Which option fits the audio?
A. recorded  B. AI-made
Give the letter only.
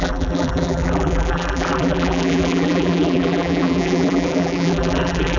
B